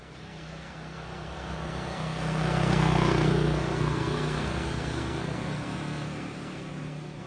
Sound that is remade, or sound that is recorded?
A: remade